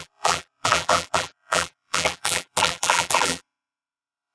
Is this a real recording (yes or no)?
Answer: no